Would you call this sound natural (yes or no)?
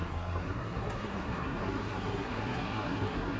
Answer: no